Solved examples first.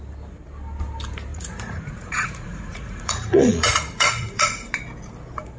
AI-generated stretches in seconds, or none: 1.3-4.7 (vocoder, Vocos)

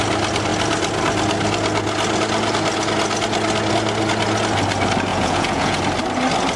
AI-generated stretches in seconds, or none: 5.1-5.8 (vocoder, Vocos)

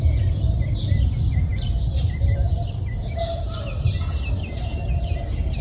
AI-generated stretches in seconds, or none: none

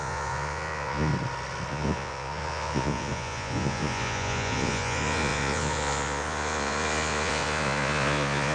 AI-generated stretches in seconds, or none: 0.0-1.1 (vocoder, Vocos); 1.7-8.5

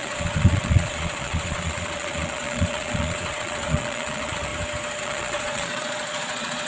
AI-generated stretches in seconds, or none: 0.0-4.5 (vocoder, Vocos); 5.0-6.7

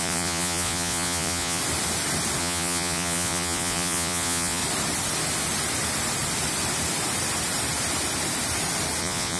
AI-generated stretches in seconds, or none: 0.0-1.6 (vocoder, Vocos); 2.4-4.6; 9.0-9.4

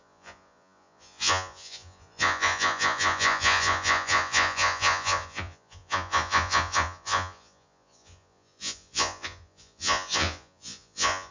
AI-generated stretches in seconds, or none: 0.0-11.3 (vocoder, Vocos)